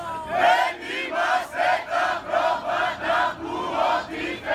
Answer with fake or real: real